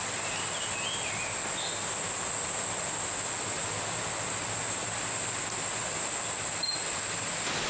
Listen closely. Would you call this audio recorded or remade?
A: recorded